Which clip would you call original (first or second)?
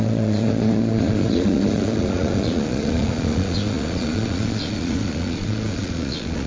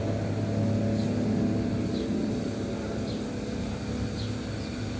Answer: second